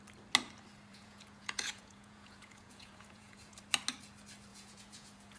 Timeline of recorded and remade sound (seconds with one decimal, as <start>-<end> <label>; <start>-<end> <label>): 0.0-0.9 recorded; 0.9-3.6 remade; 3.6-4.5 recorded; 4.5-5.4 remade